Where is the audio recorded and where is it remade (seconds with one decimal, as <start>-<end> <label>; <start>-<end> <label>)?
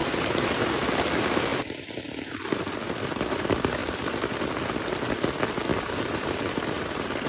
0.0-0.8 remade; 0.8-3.8 recorded; 3.8-4.4 remade; 4.4-5.7 recorded; 5.7-6.6 remade; 6.6-7.3 recorded